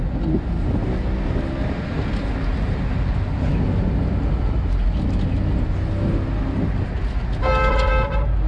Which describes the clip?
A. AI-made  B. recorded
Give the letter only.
B